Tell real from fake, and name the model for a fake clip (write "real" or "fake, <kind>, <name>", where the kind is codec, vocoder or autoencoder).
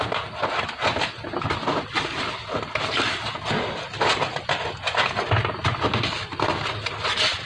real